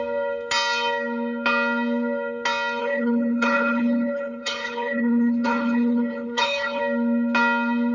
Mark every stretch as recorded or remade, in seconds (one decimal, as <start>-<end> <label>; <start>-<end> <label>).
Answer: 0.0-2.8 recorded; 2.8-6.8 remade; 6.8-7.9 recorded